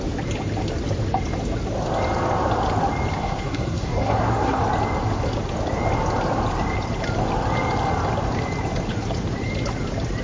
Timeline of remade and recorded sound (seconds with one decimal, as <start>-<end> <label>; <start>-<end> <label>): 0.0-3.2 recorded; 3.2-4.6 remade; 4.6-10.2 recorded